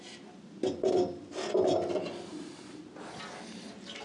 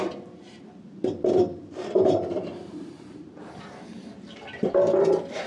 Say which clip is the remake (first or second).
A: second